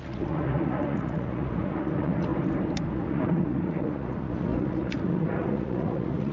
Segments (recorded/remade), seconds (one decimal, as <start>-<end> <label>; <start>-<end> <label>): 0.0-2.3 remade; 2.3-2.9 recorded; 2.9-6.3 remade